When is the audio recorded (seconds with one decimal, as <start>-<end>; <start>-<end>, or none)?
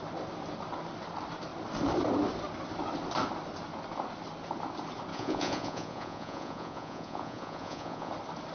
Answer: 0.0-5.1; 8.1-8.5